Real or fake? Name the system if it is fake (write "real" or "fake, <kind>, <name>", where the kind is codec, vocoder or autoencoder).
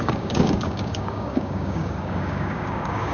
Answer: fake, codec, DAC